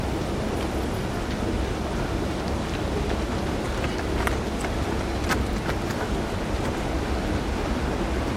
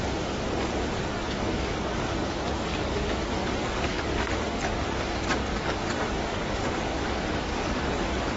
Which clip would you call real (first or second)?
first